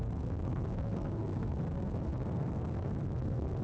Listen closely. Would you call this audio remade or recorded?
remade